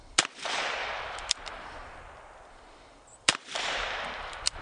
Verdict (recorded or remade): remade